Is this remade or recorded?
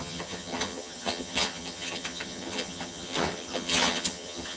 remade